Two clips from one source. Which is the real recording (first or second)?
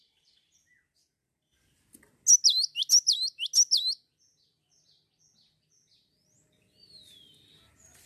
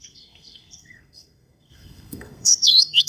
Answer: first